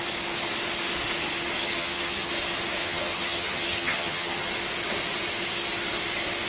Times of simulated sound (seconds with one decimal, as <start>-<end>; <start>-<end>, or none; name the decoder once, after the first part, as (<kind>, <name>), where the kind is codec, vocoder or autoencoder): 1.6-2.3 (vocoder, HiFi-GAN); 2.8-4.5